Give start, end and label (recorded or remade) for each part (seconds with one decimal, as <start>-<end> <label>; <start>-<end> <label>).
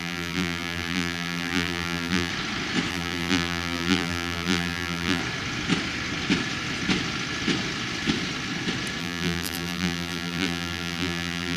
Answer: 0.0-2.3 remade; 2.3-2.9 recorded; 2.9-5.2 remade; 5.2-9.0 recorded; 9.0-11.6 remade